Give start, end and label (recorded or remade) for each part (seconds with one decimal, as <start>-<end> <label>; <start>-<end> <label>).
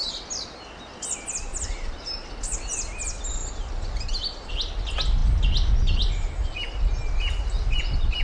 0.0-1.5 recorded; 1.5-2.3 remade; 2.3-3.4 recorded; 3.4-4.5 remade; 4.5-8.2 recorded